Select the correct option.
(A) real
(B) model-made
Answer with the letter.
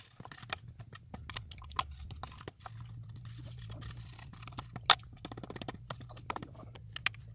A